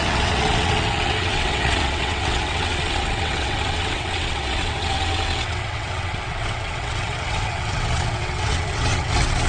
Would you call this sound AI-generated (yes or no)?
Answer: yes